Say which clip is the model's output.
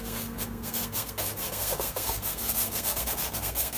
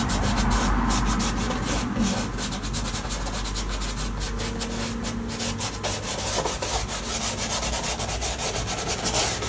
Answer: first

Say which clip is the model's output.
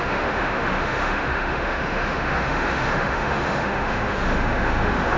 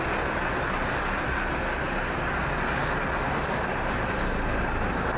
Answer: first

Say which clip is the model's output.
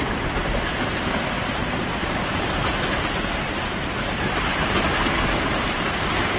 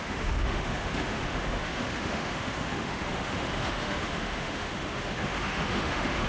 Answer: second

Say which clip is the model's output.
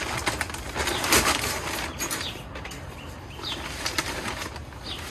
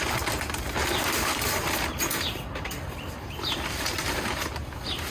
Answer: second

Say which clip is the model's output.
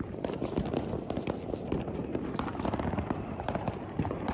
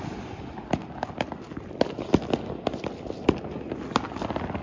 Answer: first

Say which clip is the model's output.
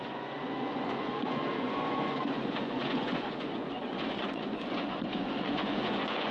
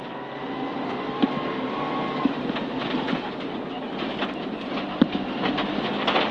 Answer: first